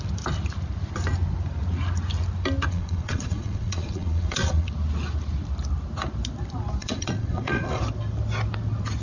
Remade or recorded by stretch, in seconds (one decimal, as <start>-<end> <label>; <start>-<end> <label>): 0.0-2.7 recorded; 2.7-4.7 remade; 4.7-6.8 recorded; 6.8-7.8 remade; 7.8-9.0 recorded